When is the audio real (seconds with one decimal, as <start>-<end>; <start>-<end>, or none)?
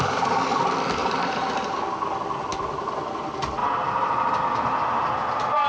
0.0-1.0; 1.7-3.6; 4.4-5.7